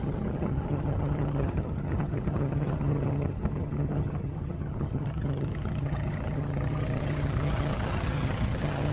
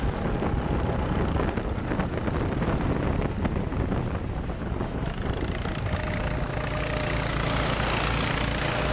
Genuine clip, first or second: second